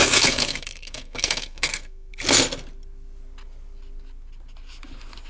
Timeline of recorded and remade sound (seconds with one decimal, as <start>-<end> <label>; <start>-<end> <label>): 0.0-2.1 remade; 2.1-5.3 recorded